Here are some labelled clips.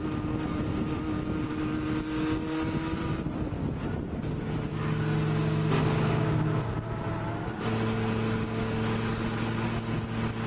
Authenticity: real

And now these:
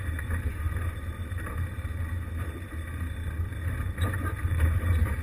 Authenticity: fake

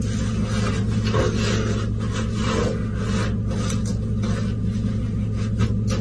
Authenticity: real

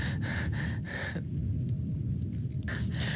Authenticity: real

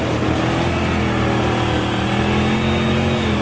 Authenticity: real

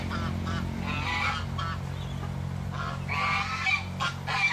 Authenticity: real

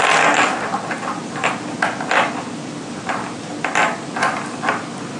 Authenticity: real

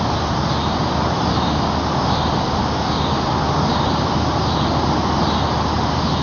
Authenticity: real